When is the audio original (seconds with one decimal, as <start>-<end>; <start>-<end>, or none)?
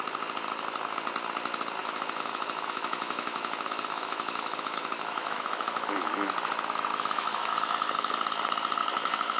0.0-1.8; 6.1-6.9; 8.1-8.8